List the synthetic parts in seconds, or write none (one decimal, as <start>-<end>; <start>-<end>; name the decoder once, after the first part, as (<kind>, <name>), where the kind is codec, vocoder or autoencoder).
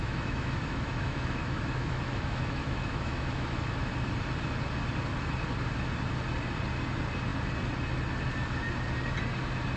0.0-3.9 (autoencoder, DAC-VAE)